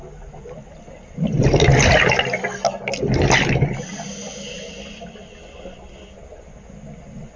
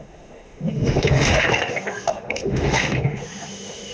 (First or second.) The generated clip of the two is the second